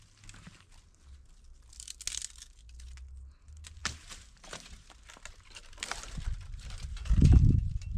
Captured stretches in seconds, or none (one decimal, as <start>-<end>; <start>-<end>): 0.0-3.8; 4.9-8.0